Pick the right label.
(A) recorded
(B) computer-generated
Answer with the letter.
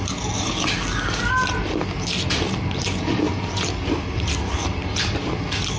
A